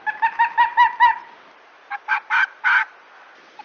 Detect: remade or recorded recorded